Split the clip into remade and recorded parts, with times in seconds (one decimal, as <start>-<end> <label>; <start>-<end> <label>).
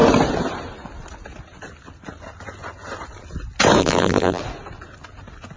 0.0-3.8 recorded; 3.8-4.4 remade; 4.4-5.6 recorded